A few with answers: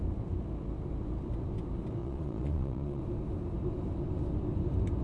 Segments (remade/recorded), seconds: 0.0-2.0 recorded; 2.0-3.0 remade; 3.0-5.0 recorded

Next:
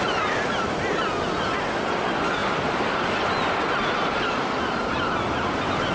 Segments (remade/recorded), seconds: 0.0-5.9 recorded

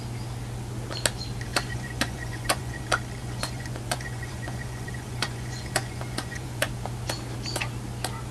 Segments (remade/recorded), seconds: 0.0-1.5 recorded; 1.5-2.8 remade; 2.8-3.2 recorded; 3.2-6.7 remade; 6.7-8.3 recorded

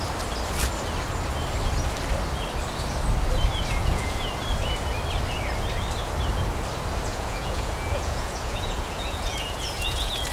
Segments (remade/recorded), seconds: 0.0-3.8 recorded; 3.8-4.3 remade; 4.3-7.1 recorded; 7.1-10.3 remade

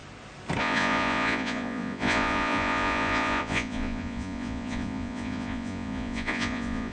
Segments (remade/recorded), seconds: 0.0-0.6 recorded; 0.6-6.9 remade